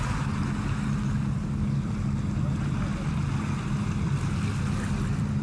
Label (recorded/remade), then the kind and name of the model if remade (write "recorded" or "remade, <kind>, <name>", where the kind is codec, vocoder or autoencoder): recorded